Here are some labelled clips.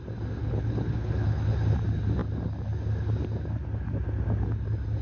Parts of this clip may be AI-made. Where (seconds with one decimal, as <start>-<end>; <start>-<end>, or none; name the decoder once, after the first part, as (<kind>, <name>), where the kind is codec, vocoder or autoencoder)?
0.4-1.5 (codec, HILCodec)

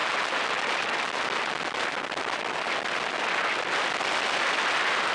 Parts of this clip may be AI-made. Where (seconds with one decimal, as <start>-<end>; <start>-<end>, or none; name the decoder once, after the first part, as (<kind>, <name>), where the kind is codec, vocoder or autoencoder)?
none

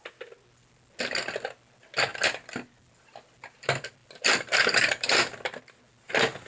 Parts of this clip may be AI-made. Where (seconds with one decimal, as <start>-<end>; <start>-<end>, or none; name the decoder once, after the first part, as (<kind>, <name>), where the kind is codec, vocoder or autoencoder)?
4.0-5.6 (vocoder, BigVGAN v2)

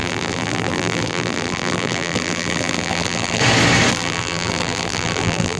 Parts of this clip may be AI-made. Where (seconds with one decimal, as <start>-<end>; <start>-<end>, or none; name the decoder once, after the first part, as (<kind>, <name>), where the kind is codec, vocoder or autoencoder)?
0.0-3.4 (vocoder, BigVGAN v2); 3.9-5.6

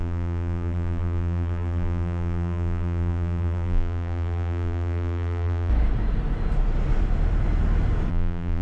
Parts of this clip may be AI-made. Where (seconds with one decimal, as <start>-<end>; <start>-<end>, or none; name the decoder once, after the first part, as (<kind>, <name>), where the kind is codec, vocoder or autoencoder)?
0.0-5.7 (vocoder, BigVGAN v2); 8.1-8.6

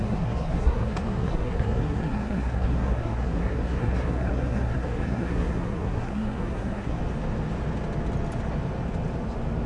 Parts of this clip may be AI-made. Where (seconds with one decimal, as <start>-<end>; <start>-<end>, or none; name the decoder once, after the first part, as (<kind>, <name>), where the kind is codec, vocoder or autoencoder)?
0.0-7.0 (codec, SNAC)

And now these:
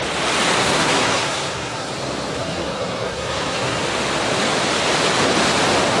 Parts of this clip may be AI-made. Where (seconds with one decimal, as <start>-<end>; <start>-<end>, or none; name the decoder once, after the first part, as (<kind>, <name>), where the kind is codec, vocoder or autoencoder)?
0.6-1.9 (codec, SNAC); 2.3-3.8